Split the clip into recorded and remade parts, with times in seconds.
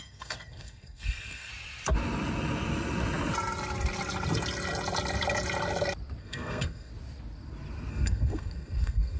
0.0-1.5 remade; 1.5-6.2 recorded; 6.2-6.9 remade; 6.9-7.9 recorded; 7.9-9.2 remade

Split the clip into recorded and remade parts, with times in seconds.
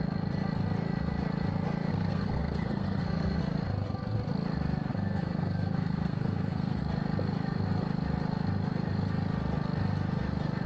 0.0-1.9 recorded; 1.9-3.4 remade; 3.4-4.9 recorded; 4.9-6.8 remade; 6.8-10.7 recorded